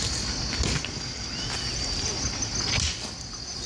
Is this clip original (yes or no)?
yes